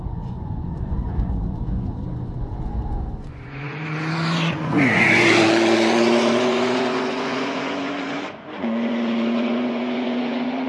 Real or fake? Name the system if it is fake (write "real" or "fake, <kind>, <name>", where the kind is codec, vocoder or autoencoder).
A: fake, vocoder, Vocos